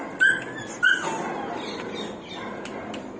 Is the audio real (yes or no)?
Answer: yes